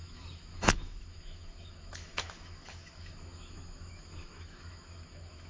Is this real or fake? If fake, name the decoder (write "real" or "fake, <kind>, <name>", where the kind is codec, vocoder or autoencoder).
fake, autoencoder, DAC-VAE